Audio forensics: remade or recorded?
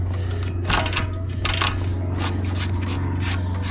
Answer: recorded